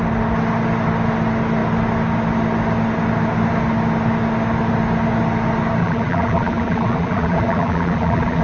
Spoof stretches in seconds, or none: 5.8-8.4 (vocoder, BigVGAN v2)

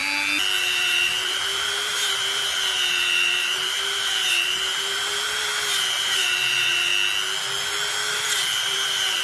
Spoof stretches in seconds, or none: 0.6-6.9 (vocoder, BigVGAN v2); 8.1-9.2

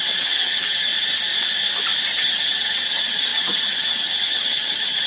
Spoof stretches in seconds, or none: 0.0-0.9 (vocoder, HiFi-GAN); 2.1-5.1